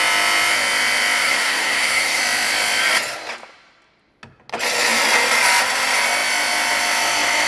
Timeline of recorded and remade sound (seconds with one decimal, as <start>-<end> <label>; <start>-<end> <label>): 0.0-1.2 recorded; 1.2-2.2 remade; 2.2-7.5 recorded